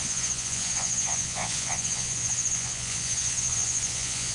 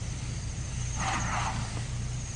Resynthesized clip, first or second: first